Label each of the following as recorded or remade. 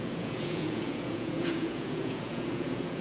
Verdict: remade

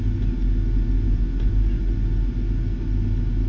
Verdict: recorded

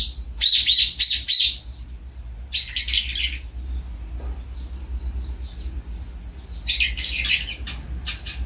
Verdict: recorded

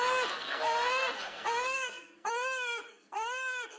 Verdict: remade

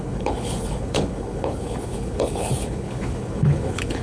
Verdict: remade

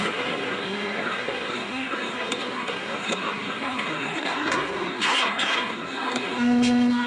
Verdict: remade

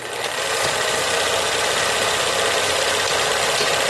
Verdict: recorded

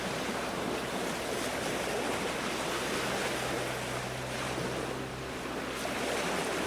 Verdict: recorded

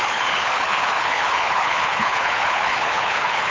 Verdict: remade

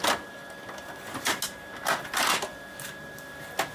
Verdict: recorded